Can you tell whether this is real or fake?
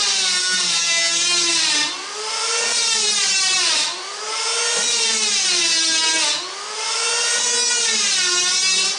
real